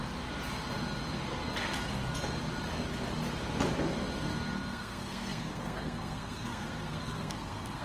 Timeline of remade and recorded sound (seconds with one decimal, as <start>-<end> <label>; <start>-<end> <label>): 0.0-4.7 recorded; 4.7-7.8 remade